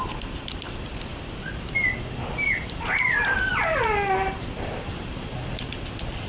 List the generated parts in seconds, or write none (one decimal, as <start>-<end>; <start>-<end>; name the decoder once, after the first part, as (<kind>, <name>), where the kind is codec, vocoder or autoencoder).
none

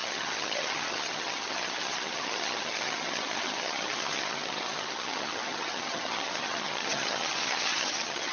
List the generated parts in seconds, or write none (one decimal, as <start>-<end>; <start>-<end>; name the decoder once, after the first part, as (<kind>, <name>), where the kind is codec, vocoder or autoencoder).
0.0-8.3 (vocoder, HiFi-GAN)